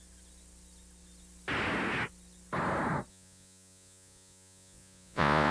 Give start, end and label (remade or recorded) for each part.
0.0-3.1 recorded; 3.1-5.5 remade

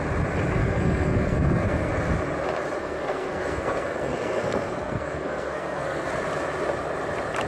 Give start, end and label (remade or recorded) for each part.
0.0-0.6 recorded; 0.6-1.9 remade; 1.9-2.8 recorded; 2.8-6.1 remade; 6.1-7.5 recorded